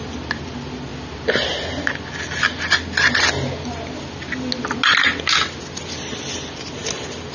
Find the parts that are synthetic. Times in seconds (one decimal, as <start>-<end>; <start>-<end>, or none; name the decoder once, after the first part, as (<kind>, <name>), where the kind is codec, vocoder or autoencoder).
none